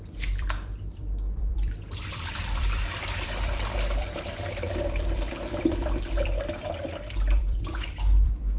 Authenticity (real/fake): fake